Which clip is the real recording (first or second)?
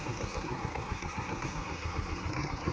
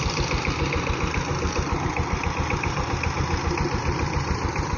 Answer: second